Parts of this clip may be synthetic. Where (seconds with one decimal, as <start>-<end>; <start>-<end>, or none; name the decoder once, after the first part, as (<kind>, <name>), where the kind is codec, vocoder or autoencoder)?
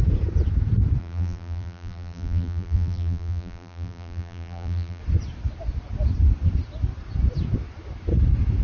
1.0-5.0 (vocoder, BigVGAN v2)